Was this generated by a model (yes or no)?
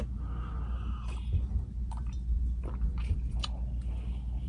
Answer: no